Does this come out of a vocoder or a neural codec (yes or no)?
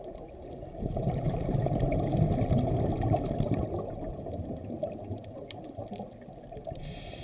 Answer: no